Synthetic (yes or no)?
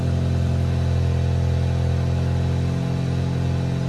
no